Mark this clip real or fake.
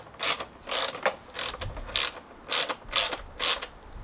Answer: real